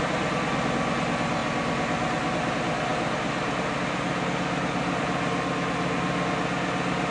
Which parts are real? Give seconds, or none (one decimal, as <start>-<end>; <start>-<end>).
0.0-7.1